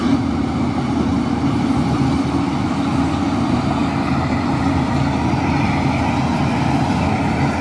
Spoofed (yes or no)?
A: no